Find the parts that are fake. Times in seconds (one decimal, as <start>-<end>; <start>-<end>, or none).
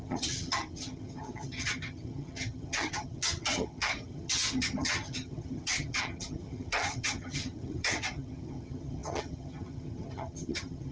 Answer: 0.0-10.9